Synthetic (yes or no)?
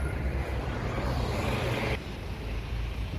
yes